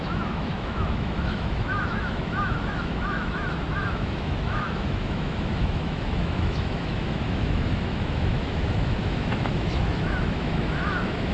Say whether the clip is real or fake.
fake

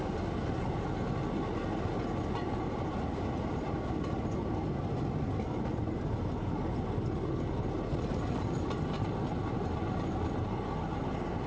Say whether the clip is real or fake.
real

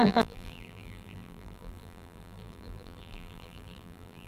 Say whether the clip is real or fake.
fake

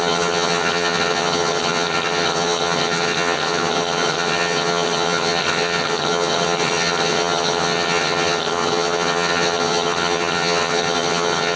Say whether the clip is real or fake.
fake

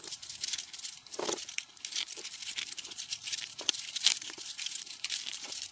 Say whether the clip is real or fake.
fake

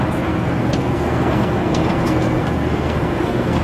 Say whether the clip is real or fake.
fake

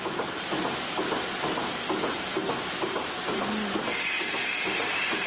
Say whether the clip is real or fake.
real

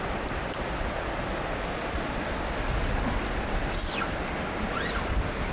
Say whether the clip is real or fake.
real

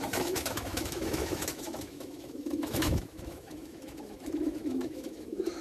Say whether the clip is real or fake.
fake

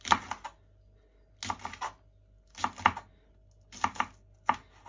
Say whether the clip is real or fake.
real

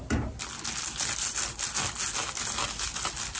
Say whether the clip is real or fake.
real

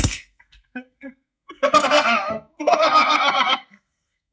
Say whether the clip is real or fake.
fake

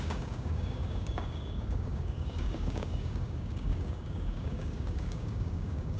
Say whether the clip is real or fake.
fake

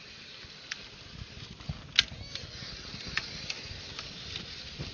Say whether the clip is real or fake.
real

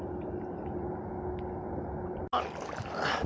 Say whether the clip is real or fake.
real